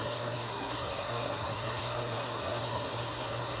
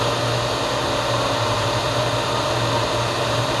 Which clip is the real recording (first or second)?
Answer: second